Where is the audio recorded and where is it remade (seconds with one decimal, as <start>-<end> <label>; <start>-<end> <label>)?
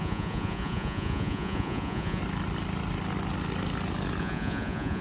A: 0.0-2.2 remade; 2.2-4.2 recorded; 4.2-5.0 remade